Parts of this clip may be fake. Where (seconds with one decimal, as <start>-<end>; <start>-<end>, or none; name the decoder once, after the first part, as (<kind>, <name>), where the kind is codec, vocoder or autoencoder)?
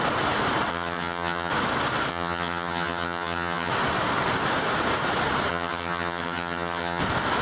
0.7-1.5 (vocoder, HiFi-GAN); 2.1-3.7; 5.5-7.0